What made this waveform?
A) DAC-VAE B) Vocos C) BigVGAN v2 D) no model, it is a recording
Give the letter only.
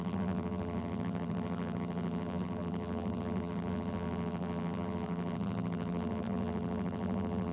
C